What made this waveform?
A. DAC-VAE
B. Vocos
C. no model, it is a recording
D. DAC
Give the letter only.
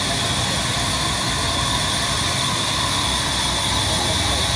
C